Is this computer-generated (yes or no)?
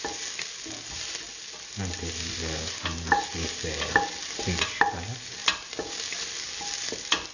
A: no